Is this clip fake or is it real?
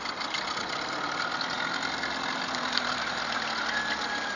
real